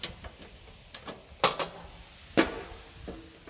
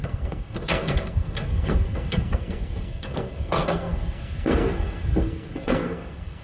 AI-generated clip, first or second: second